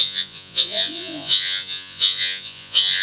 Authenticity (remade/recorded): remade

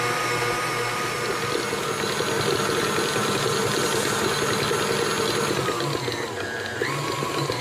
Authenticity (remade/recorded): recorded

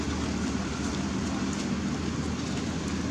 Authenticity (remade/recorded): recorded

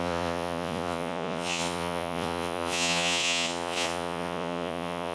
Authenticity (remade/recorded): remade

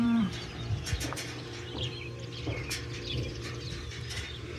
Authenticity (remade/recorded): remade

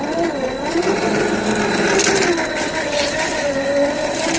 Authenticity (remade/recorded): recorded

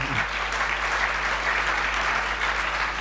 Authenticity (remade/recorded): recorded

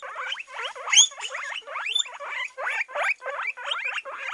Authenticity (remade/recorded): remade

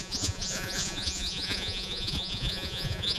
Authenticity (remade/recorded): remade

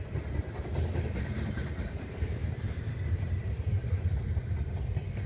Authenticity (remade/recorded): remade